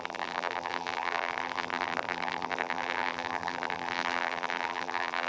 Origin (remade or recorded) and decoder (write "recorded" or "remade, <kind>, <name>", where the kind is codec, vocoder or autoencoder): remade, vocoder, BigVGAN v2